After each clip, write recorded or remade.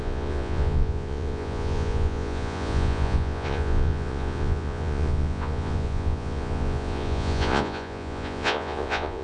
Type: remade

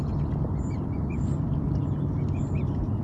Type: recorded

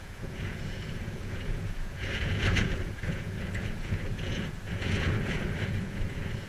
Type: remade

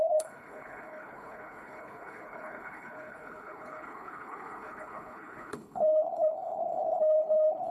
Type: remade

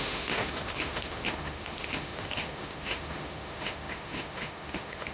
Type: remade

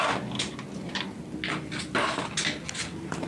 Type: recorded